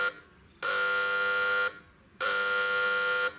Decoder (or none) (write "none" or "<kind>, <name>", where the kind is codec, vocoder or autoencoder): none